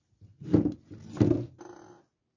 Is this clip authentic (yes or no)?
yes